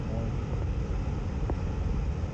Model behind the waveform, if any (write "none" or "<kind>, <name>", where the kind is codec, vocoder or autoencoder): none